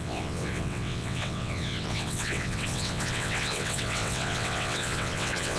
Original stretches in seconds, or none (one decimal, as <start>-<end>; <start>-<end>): none

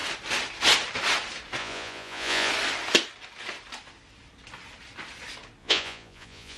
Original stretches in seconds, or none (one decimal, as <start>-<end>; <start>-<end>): 0.0-1.6; 2.5-5.6

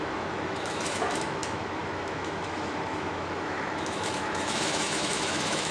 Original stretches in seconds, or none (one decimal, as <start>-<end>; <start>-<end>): none

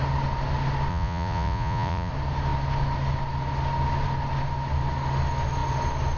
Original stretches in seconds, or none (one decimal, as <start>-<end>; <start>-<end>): 0.0-0.9; 2.1-6.2

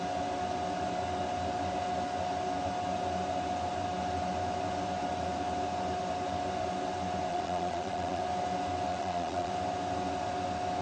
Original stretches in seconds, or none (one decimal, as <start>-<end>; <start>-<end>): 0.0-7.3; 8.2-8.9; 9.5-10.8